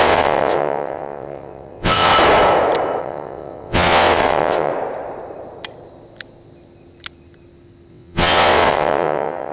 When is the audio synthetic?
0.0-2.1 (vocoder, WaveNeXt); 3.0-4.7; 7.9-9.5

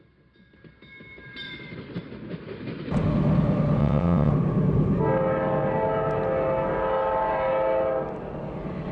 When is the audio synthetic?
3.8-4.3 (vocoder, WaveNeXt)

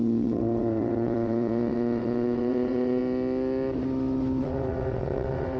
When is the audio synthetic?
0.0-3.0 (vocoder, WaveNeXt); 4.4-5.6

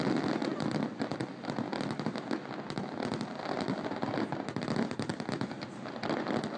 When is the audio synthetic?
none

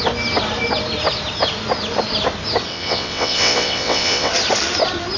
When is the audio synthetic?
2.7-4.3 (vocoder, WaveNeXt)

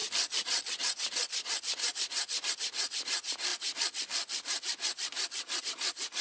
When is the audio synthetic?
none